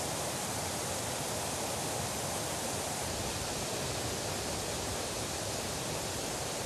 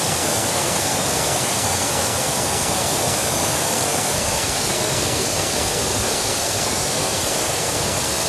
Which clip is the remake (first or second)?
second